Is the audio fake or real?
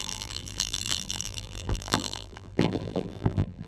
fake